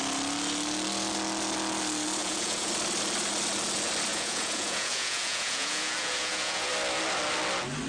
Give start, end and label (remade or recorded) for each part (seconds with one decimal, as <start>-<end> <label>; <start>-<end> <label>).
0.0-2.2 recorded; 2.2-2.7 remade; 2.7-4.1 recorded; 4.1-6.7 remade; 6.7-7.9 recorded